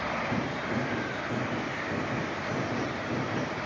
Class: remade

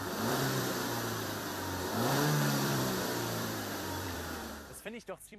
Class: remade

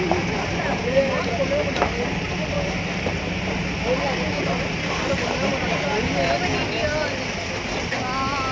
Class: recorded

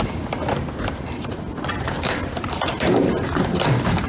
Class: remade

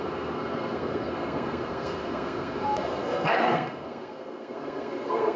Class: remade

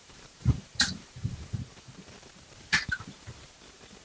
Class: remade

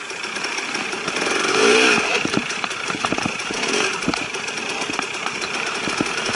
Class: remade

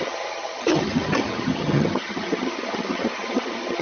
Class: remade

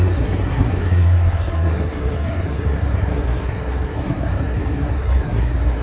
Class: remade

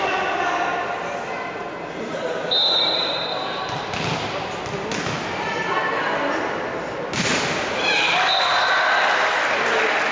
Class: recorded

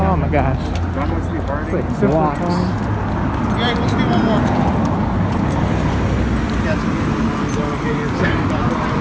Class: recorded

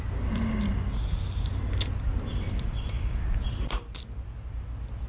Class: recorded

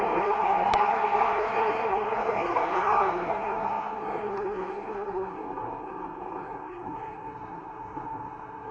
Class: remade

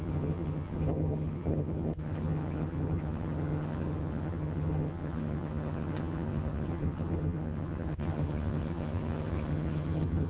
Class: remade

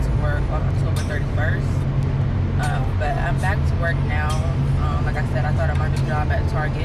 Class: recorded